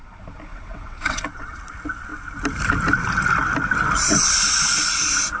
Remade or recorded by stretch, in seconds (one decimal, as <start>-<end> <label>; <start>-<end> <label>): 0.0-0.5 recorded; 0.5-1.6 remade; 1.6-5.4 recorded

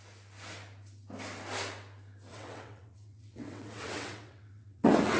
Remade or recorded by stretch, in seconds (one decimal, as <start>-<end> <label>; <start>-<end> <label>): 0.0-2.3 recorded; 2.3-5.2 remade